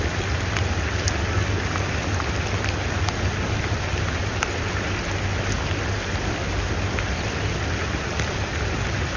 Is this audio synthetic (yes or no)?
no